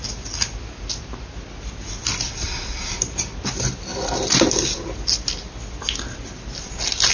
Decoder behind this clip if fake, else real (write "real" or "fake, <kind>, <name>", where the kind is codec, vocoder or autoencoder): real